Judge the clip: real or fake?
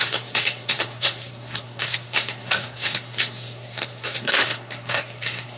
fake